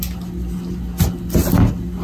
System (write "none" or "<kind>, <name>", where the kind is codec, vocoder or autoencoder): none